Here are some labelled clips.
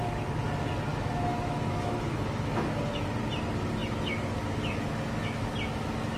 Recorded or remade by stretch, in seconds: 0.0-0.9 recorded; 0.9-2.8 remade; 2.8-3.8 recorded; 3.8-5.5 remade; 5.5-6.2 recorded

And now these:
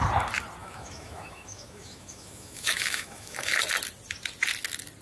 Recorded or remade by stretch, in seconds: 0.0-0.6 recorded; 0.6-3.6 remade; 3.6-5.0 recorded

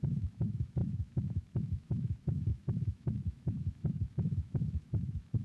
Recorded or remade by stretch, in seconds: 0.0-5.4 remade

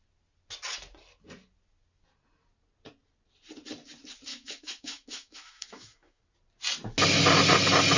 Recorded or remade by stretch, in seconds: 0.0-4.3 recorded; 4.3-6.2 remade; 6.2-8.0 recorded

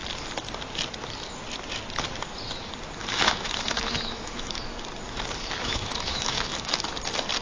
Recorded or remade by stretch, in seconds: 0.0-3.0 recorded; 3.0-4.6 remade; 4.6-5.6 recorded; 5.6-6.8 remade; 6.8-7.4 recorded

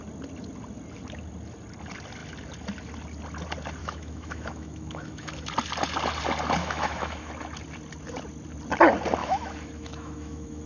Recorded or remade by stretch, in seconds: 0.0-3.8 recorded; 3.8-5.5 remade; 5.5-6.6 recorded; 6.6-7.3 remade; 7.3-9.2 recorded; 9.2-10.7 remade

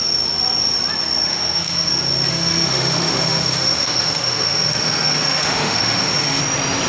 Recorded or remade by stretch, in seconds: 0.0-1.3 recorded; 1.3-1.9 remade; 1.9-2.3 recorded; 2.3-6.4 remade; 6.4-6.9 recorded